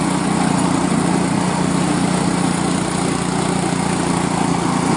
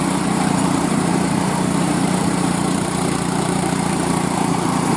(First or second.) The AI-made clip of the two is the second